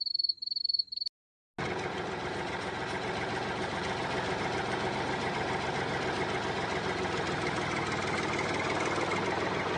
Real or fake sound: real